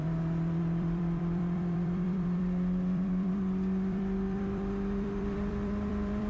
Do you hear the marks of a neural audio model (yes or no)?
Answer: yes